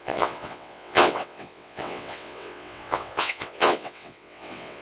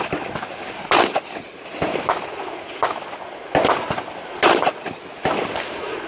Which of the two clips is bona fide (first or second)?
second